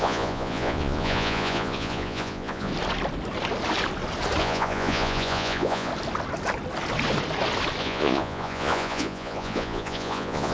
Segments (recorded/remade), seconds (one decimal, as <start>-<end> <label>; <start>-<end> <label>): 0.0-2.7 remade; 2.7-4.4 recorded; 4.4-5.9 remade; 5.9-7.8 recorded; 7.8-10.5 remade